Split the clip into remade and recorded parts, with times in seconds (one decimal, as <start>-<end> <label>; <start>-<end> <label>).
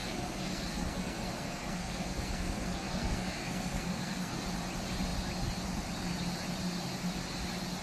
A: 0.0-4.4 remade; 4.4-7.8 recorded